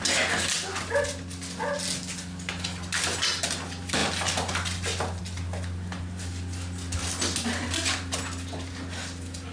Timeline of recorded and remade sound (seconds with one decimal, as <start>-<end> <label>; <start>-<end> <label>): 0.0-9.5 recorded